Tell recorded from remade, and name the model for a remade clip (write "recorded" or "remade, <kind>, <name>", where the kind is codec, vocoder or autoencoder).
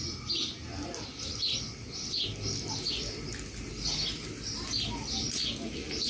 recorded